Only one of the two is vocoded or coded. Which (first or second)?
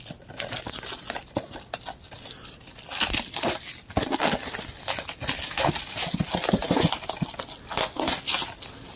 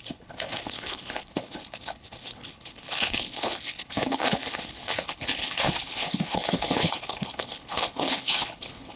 second